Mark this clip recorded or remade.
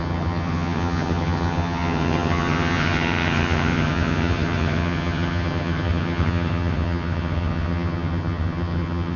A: remade